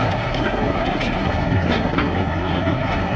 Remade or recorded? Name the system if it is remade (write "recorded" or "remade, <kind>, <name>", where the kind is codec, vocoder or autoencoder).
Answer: remade, codec, SNAC